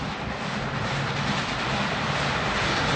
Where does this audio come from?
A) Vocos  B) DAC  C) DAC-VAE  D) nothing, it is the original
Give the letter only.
D